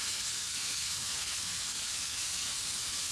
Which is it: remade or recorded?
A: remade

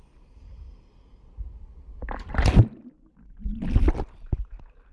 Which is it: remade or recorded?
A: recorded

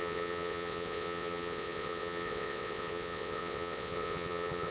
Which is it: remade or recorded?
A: remade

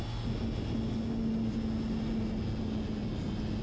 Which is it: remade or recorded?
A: recorded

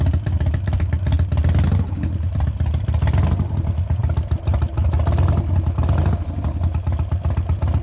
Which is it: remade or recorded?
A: remade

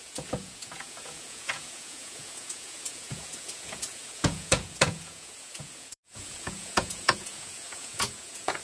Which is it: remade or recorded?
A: remade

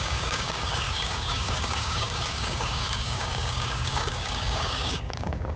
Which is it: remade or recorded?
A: remade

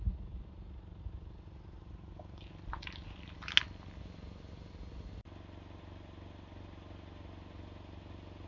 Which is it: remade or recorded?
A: recorded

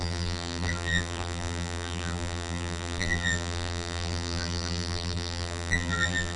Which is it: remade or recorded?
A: remade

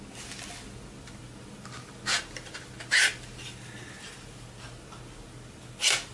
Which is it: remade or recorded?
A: recorded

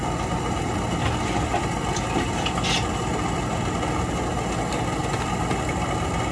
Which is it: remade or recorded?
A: recorded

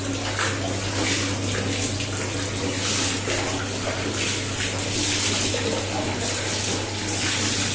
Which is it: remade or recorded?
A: recorded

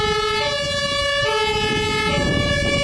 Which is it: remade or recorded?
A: recorded